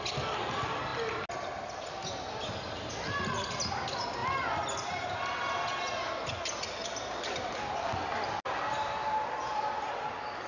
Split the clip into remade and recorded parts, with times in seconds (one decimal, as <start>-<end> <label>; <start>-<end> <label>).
0.0-6.8 recorded; 6.8-7.9 remade; 7.9-10.5 recorded

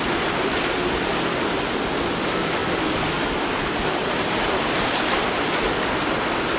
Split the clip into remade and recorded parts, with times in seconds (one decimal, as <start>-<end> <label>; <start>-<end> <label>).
0.0-2.6 recorded; 2.6-5.5 remade; 5.5-6.6 recorded

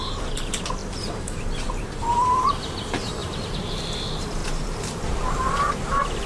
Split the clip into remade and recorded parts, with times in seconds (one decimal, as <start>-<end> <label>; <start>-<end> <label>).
0.0-6.3 remade

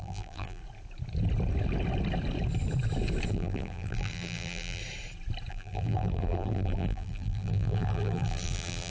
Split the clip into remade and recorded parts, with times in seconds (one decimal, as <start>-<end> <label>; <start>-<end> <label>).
0.0-0.6 remade; 0.6-3.3 recorded; 3.3-4.8 remade; 4.8-5.5 recorded; 5.5-8.9 remade

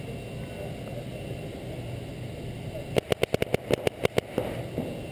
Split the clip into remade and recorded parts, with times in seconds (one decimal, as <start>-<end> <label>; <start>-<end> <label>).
0.0-5.1 recorded

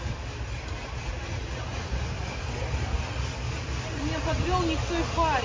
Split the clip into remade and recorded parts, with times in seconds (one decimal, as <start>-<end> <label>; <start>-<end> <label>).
0.0-5.4 recorded